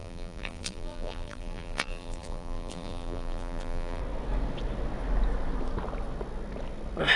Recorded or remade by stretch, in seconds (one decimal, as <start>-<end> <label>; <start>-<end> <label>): 0.0-4.0 remade; 4.0-7.2 recorded